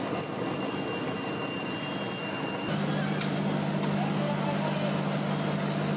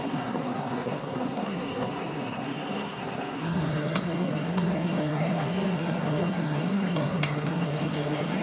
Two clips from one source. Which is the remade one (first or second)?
second